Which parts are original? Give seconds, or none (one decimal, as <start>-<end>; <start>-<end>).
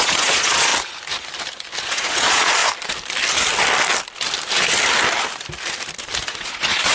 0.7-1.8; 2.6-6.2